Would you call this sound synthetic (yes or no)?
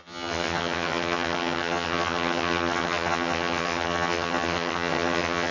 yes